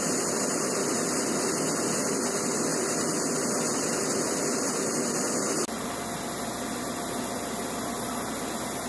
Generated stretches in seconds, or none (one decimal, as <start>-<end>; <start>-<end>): none